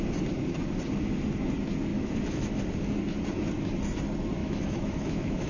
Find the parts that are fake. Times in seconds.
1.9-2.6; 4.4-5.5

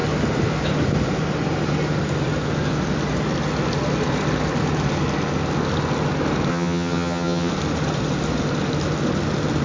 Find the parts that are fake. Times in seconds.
6.5-7.5

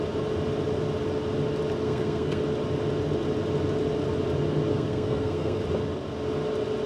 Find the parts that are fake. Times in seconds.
1.8-2.4; 4.7-5.6

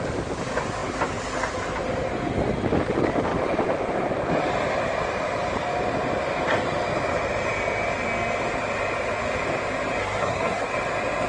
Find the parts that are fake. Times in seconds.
10.0-10.7

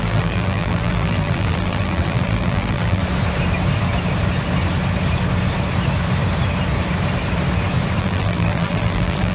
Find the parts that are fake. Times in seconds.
0.0-3.0; 8.0-9.3

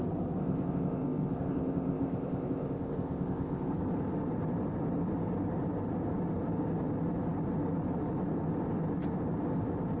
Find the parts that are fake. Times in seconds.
0.4-3.7